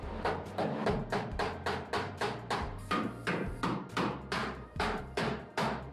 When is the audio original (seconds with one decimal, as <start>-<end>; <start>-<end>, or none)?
0.0-4.4; 5.0-5.9